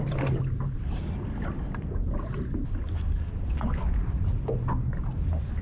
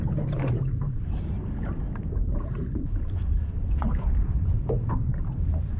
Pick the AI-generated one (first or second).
second